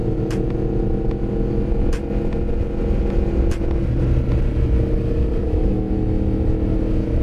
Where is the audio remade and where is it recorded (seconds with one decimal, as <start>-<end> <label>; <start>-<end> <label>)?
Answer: 0.0-5.4 recorded; 5.4-5.9 remade; 5.9-7.2 recorded